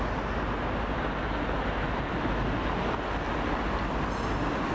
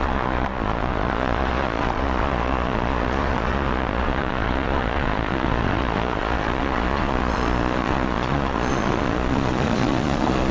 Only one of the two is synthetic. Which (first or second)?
second